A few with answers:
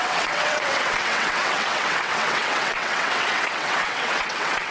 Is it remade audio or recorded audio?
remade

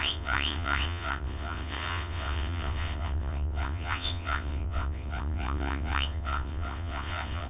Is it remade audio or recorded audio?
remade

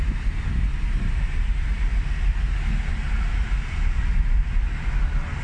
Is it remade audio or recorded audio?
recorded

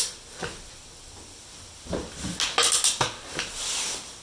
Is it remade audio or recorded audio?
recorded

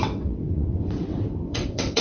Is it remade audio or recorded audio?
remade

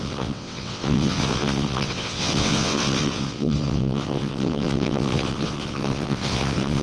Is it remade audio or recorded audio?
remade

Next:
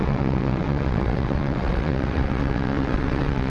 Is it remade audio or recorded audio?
remade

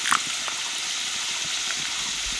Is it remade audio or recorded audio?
recorded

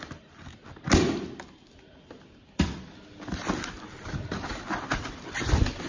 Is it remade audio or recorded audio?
recorded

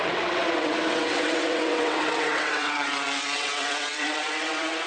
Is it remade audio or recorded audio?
remade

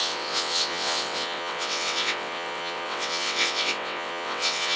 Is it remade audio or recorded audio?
remade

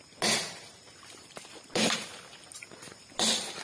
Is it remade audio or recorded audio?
recorded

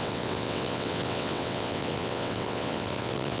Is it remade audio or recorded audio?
remade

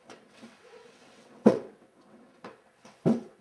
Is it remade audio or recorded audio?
remade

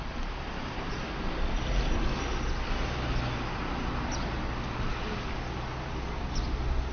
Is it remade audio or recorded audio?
recorded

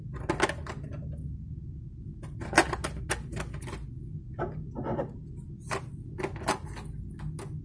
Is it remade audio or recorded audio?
recorded